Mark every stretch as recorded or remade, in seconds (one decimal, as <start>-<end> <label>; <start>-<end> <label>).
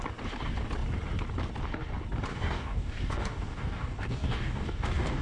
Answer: 0.0-2.3 recorded; 2.3-5.2 remade